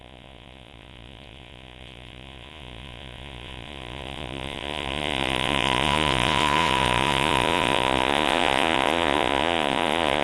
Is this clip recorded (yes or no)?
no